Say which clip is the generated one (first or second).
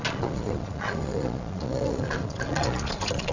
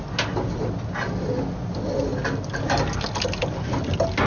first